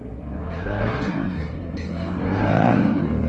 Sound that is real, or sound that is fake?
fake